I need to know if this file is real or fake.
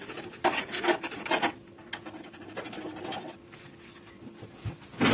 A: real